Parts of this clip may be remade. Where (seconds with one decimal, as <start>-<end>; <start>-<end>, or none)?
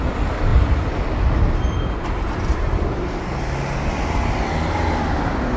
none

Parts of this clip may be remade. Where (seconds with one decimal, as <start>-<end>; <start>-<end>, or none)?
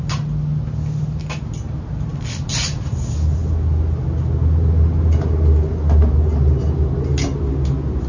2.1-3.0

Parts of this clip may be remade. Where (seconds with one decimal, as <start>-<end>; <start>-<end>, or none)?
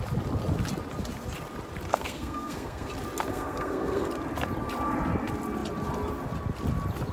1.9-2.9; 3.3-4.1